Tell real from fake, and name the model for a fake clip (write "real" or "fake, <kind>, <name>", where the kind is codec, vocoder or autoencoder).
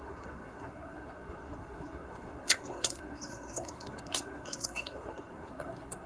fake, codec, SNAC